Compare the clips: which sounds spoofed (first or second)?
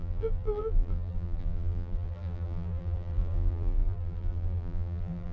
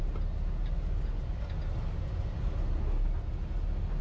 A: first